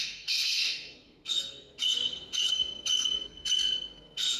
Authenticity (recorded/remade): remade